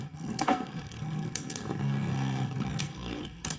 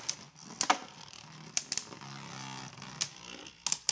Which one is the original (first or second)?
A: second